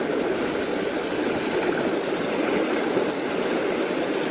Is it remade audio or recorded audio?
recorded